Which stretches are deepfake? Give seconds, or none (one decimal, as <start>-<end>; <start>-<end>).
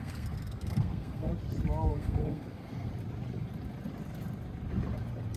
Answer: 0.0-1.3; 1.9-2.9